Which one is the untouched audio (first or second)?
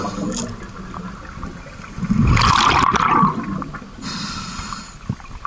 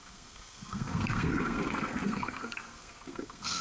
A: first